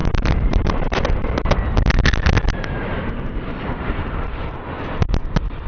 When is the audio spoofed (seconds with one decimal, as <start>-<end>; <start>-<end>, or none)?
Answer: 0.0-1.1; 2.9-4.6